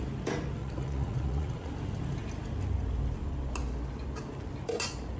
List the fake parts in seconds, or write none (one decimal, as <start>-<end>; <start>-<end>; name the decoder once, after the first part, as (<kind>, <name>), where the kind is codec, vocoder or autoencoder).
0.6-1.7 (vocoder, Vocos)